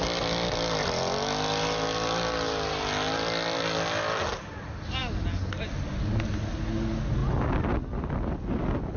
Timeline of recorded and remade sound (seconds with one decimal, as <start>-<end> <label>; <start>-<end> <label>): 0.0-9.0 recorded